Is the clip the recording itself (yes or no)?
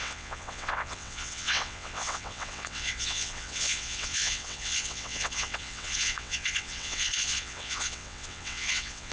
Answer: no